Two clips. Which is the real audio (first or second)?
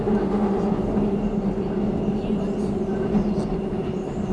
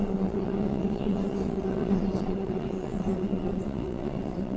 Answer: first